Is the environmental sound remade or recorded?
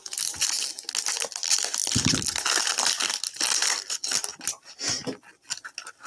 recorded